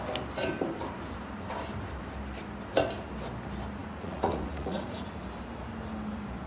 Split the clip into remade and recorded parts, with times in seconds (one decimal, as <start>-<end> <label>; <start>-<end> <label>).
0.0-3.8 recorded; 3.8-5.1 remade; 5.1-6.5 recorded